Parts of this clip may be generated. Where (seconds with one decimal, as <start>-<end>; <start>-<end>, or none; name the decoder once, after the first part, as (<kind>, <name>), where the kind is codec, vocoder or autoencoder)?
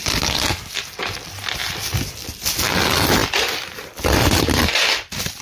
3.2-4.6 (vocoder, BigVGAN v2)